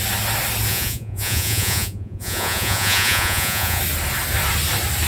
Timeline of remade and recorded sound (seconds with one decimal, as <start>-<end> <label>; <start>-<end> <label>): 0.0-0.7 recorded; 0.7-3.8 remade; 3.8-5.1 recorded